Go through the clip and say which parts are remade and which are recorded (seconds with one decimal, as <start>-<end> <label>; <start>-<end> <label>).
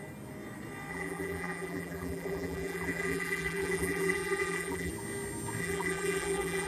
0.0-0.9 recorded; 0.9-4.9 remade; 4.9-5.6 recorded; 5.6-6.7 remade